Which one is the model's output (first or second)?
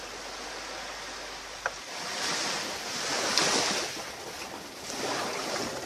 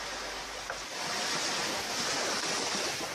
first